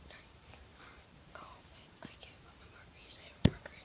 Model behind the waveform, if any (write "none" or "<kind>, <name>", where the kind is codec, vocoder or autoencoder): vocoder, BigVGAN v2